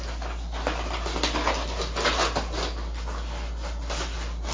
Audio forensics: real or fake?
real